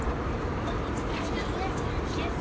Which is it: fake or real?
real